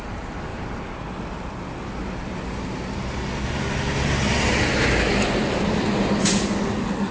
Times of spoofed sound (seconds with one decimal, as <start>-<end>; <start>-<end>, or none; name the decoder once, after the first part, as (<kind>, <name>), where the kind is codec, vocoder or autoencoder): none